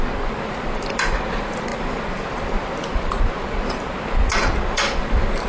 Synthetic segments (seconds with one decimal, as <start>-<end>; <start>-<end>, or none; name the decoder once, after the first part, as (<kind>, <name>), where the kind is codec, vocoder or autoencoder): 0.0-5.5 (vocoder, BigVGAN v2)